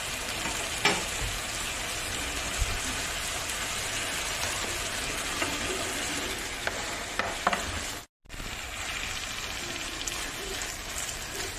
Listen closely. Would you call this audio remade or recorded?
recorded